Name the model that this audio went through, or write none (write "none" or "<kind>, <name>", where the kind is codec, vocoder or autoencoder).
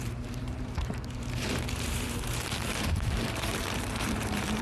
vocoder, BigVGAN v2